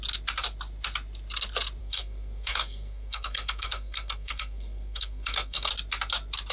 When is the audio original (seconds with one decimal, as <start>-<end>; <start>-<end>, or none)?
0.0-1.8; 5.7-6.5